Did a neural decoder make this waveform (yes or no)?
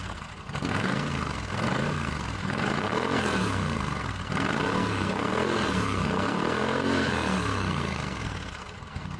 yes